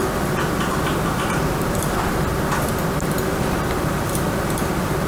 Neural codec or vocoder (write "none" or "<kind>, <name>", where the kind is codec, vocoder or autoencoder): vocoder, BigVGAN v2